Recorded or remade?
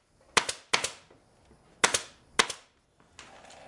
recorded